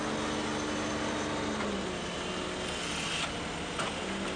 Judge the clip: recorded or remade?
recorded